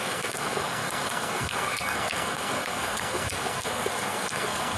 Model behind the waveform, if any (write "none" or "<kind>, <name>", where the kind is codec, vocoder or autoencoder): codec, SNAC